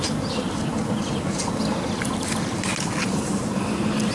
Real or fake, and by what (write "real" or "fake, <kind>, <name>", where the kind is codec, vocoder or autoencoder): real